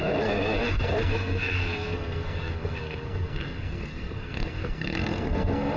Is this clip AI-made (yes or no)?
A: yes